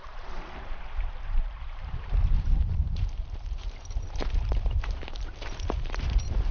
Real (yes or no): no